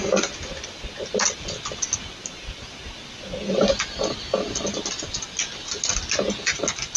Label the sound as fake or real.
real